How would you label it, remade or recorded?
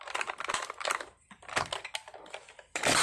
recorded